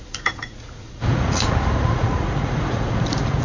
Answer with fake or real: fake